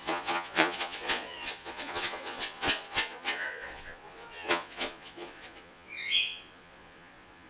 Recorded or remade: remade